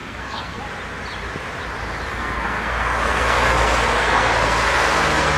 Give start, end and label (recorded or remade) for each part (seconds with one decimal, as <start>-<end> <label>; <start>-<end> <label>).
0.0-0.6 remade; 0.6-2.1 recorded; 2.1-5.4 remade